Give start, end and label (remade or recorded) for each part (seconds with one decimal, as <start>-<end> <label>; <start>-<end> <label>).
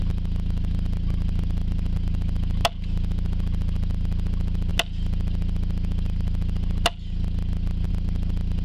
0.0-8.6 recorded